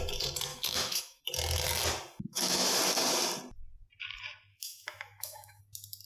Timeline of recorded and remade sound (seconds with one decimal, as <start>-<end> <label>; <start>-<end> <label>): 0.0-0.5 recorded; 0.5-1.2 remade; 1.2-2.3 recorded; 2.3-2.8 remade; 2.8-4.5 recorded; 4.5-5.6 remade; 5.6-6.1 recorded